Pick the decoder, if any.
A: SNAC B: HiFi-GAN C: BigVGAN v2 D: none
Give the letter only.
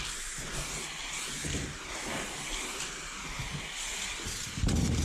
D